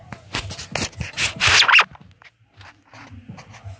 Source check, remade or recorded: recorded